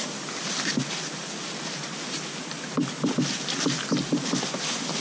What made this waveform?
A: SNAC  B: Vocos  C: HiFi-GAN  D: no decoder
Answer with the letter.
D